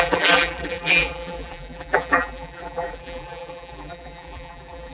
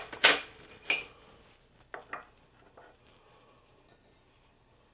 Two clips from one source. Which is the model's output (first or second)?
first